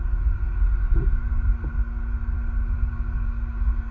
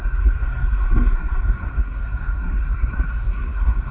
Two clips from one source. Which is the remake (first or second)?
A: second